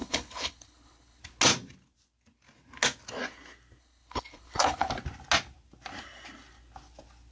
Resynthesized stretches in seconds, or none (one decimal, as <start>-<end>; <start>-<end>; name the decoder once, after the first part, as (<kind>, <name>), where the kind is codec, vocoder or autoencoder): 0.0-1.2 (codec, HILCodec); 3.8-4.9